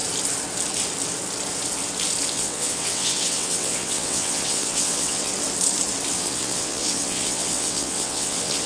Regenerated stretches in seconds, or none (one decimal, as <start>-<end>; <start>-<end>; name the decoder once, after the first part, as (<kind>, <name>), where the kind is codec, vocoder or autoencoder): 2.3-5.3 (vocoder, WaveNeXt); 6.1-8.7

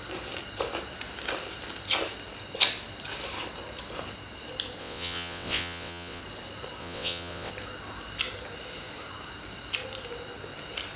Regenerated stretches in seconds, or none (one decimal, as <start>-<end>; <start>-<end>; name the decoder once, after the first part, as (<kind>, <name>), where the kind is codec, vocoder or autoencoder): 4.8-6.2 (vocoder, WaveNeXt); 6.8-7.5

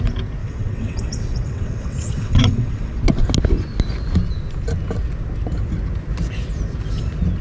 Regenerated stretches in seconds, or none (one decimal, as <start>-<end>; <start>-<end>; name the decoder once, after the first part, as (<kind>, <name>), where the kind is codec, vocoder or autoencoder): 0.4-3.0 (vocoder, WaveNeXt)

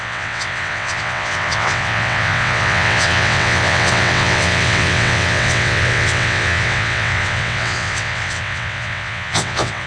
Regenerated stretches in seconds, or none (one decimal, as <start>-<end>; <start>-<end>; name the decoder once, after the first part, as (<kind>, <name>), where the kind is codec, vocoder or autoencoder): 0.0-9.9 (vocoder, WaveNeXt)